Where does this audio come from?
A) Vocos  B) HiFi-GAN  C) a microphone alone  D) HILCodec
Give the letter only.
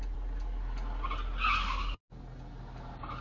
C